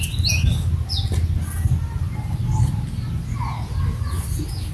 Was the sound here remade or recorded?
recorded